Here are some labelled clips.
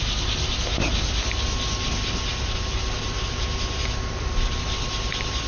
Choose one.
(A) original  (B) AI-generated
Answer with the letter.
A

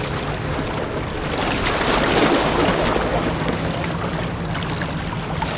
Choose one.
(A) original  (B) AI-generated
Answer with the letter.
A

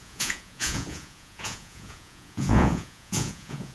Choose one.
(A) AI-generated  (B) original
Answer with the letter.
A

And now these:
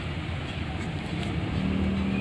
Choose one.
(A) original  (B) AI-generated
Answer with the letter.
A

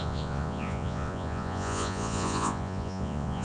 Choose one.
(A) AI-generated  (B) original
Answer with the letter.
A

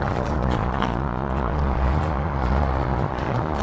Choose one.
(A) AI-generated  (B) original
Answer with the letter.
A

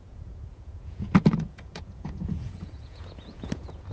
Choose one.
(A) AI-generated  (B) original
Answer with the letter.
A